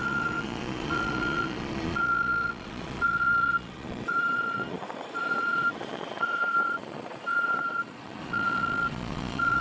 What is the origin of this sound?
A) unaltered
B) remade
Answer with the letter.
B